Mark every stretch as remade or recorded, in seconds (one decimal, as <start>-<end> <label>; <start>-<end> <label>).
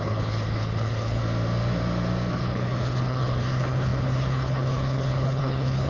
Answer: 0.0-1.2 remade; 1.2-2.3 recorded; 2.3-5.9 remade